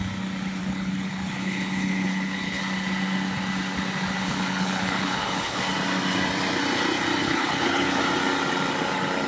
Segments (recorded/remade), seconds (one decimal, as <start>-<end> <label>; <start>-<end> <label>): 0.0-0.6 recorded; 0.6-2.6 remade; 2.6-4.2 recorded; 4.2-5.6 remade; 5.6-7.2 recorded; 7.2-8.0 remade; 8.0-9.3 recorded